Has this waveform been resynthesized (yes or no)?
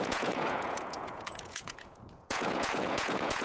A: yes